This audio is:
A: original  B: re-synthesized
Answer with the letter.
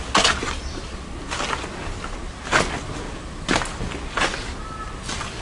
A